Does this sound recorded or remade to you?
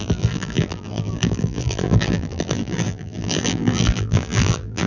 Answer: remade